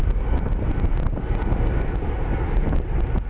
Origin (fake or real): real